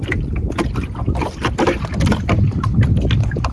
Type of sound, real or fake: real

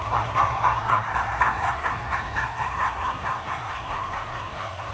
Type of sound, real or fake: fake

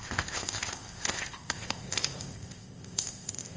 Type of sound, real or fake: fake